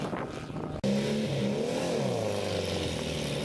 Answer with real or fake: real